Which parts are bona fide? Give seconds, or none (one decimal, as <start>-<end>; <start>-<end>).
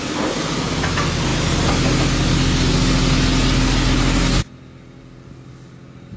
0.0-6.2